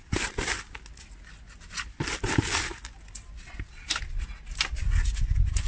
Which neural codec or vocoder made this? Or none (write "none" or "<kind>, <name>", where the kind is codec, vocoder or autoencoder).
none